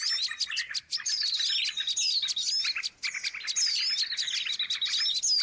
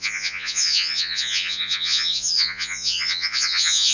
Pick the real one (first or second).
first